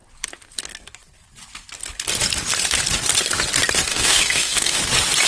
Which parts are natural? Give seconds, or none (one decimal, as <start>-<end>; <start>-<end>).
0.0-3.9; 4.8-5.3